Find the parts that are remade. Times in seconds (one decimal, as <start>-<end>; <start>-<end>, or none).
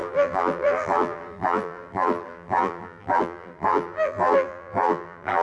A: 0.0-5.4